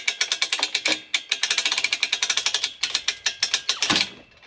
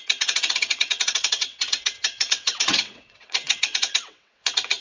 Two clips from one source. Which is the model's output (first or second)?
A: second